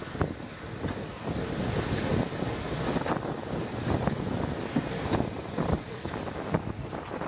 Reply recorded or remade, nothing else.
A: recorded